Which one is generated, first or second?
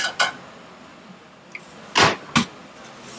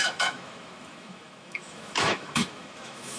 second